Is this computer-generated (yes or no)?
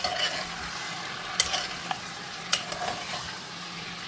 no